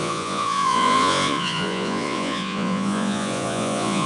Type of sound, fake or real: fake